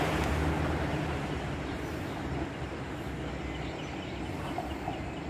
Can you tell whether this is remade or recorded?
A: recorded